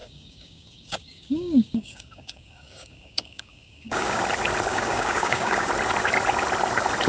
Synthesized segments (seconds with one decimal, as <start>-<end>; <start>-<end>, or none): 0.0-4.2; 4.7-5.7